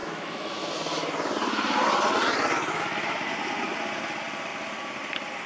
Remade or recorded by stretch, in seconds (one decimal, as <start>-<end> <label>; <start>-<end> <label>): 0.0-0.7 remade; 0.7-5.5 recorded